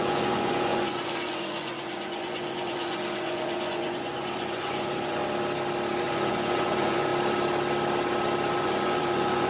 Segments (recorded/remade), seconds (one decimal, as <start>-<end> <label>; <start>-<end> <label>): 0.0-5.2 remade; 5.2-6.0 recorded; 6.0-7.1 remade; 7.1-8.6 recorded; 8.6-9.5 remade